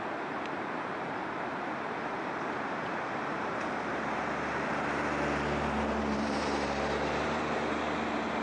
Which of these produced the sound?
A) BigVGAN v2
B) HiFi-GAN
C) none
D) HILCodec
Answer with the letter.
A